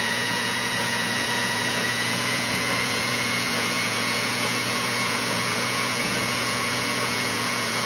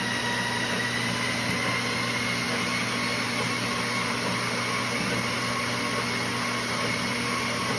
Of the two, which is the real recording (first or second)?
second